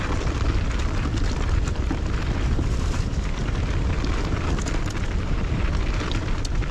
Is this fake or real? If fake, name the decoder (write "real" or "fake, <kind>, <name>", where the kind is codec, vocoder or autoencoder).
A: fake, vocoder, BigVGAN v2